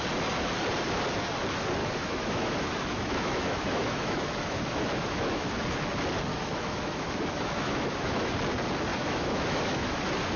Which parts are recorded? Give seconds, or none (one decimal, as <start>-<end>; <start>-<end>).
0.0-1.8; 5.5-6.3; 8.3-8.9; 10.0-10.4